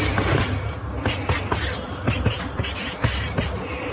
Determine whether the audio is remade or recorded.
recorded